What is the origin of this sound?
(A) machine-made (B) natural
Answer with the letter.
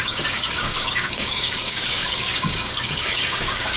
A